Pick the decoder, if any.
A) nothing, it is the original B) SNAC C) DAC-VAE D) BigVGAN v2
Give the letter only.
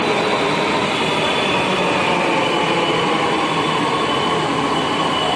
A